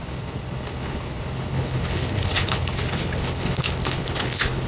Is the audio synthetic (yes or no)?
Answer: yes